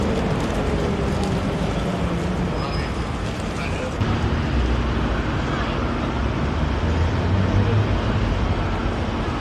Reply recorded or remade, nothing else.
recorded